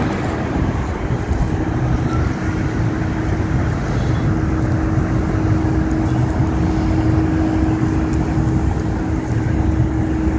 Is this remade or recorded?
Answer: recorded